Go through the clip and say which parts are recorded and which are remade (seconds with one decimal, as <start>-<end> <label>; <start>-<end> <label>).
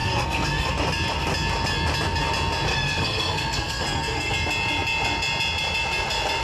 0.0-0.7 remade; 0.7-2.7 recorded; 2.7-4.3 remade; 4.3-6.4 recorded